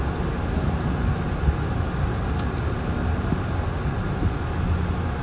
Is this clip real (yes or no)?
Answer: yes